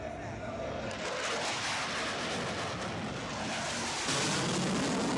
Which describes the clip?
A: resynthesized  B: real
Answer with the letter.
B